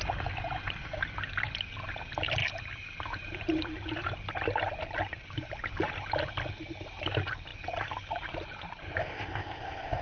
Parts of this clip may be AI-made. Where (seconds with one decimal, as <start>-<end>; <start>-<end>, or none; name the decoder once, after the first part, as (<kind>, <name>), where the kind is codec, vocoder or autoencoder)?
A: 9.0-10.0 (codec, ZipCodec)